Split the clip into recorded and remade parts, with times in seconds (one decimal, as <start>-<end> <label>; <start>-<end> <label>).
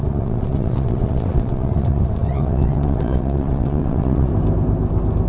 0.0-4.3 remade; 4.3-5.3 recorded